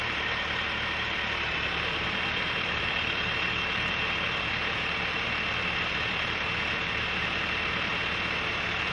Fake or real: fake